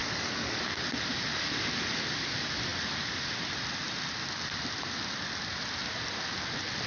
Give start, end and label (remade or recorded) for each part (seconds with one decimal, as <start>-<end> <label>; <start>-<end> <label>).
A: 0.0-0.6 remade; 0.6-6.9 recorded